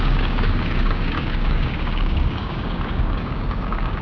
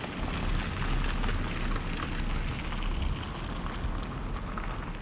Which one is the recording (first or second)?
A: second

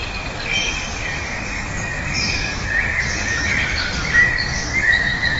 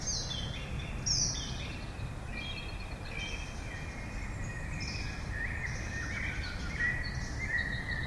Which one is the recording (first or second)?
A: second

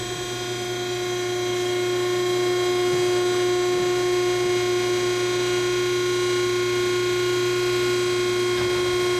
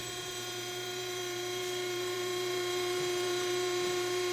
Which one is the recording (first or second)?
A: first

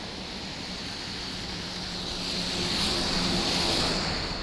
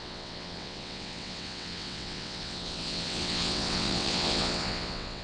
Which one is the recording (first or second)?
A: first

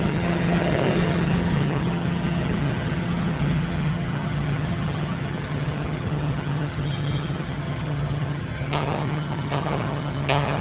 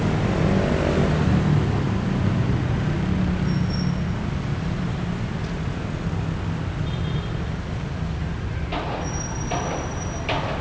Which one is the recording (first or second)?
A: second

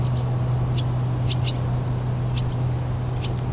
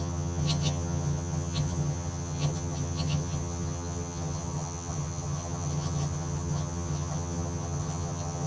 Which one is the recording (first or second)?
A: first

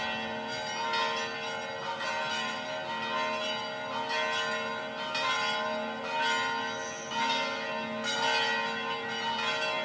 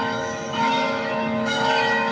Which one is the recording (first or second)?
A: first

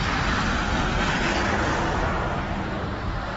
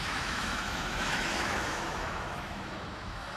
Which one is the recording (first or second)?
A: first